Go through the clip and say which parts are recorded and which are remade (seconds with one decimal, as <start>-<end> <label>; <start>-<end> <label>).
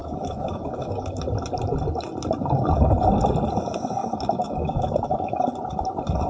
0.0-1.2 remade; 1.2-4.0 recorded; 4.0-5.5 remade; 5.5-6.3 recorded